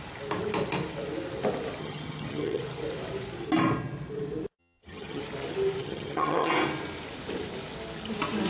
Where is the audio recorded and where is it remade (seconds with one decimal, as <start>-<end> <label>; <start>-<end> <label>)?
0.0-1.8 recorded; 1.8-2.6 remade; 2.6-4.6 recorded; 4.6-5.2 remade; 5.2-5.8 recorded; 5.8-6.5 remade; 6.5-8.5 recorded